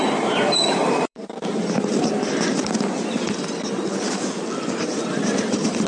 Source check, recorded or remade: remade